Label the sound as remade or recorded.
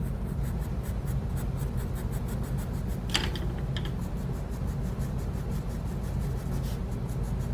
recorded